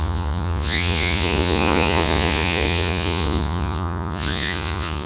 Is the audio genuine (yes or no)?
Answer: no